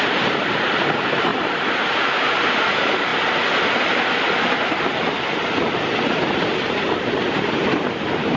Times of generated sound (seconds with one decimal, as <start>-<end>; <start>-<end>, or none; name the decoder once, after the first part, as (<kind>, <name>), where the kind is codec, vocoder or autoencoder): 0.0-1.3 (vocoder, BigVGAN v2); 2.1-3.1; 6.7-8.4

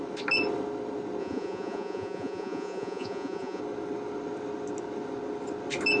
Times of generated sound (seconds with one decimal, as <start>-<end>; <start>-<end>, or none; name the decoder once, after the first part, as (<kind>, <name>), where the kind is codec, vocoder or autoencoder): 1.2-3.6 (vocoder, Vocos)